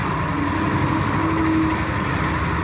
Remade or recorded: recorded